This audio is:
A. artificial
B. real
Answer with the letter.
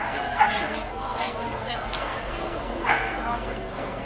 A